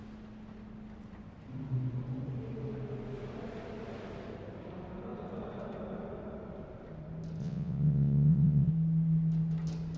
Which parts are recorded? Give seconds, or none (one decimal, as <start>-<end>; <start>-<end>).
0.0-7.4; 8.7-10.0